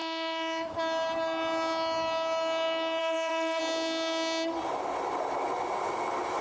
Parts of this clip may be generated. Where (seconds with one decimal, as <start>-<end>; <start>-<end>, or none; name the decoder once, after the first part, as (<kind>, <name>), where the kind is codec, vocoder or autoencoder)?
0.0-0.7 (autoencoder, DAC-VAE); 3.0-3.6

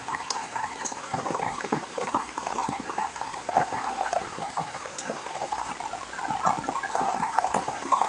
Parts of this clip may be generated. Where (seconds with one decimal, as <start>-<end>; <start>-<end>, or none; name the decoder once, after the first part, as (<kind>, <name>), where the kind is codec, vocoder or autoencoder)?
0.0-5.7 (codec, SNAC); 6.9-8.1

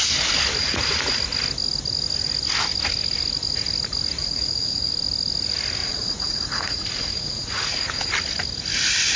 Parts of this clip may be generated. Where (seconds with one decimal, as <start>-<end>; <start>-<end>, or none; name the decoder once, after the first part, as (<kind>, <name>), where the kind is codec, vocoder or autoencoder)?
0.6-1.2 (vocoder, Vocos); 4.2-4.9; 5.8-8.1

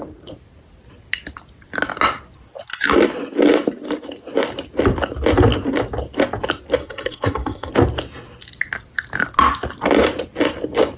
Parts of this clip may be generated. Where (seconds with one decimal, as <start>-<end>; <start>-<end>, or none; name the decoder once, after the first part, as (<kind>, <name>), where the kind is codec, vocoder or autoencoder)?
6.8-7.7 (codec, SNAC)

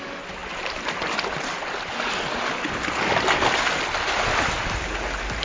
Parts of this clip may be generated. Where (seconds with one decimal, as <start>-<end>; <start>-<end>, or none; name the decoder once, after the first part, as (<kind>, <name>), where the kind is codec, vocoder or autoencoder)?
none

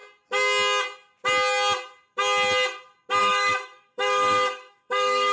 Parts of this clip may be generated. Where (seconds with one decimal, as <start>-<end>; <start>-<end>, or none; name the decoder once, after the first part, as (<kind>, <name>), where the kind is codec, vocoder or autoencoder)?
3.2-5.3 (autoencoder, DAC-VAE)

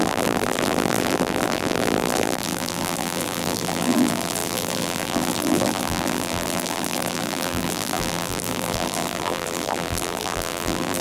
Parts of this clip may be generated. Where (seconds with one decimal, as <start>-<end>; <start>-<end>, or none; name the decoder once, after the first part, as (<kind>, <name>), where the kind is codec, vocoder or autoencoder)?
0.0-11.0 (vocoder, BigVGAN v2)

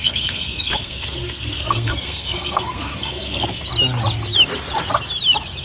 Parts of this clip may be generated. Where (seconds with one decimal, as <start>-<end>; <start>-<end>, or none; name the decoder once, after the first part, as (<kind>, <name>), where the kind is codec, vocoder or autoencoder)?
0.0-3.7 (codec, SNAC)